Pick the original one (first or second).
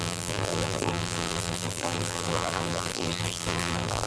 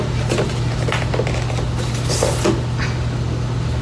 second